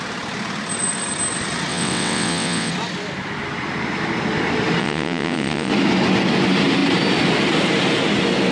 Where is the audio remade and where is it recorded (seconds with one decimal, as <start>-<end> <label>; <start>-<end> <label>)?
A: 0.0-1.7 recorded; 1.7-2.7 remade; 2.7-4.8 recorded; 4.8-5.7 remade; 5.7-8.5 recorded